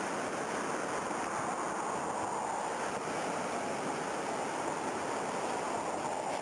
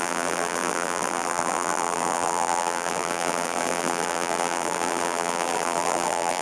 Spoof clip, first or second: second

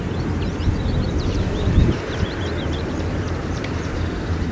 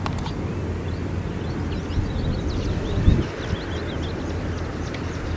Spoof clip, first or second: first